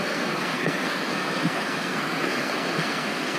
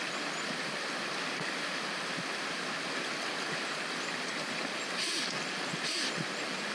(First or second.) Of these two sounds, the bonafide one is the second